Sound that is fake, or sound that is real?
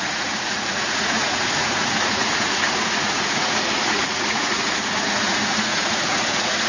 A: fake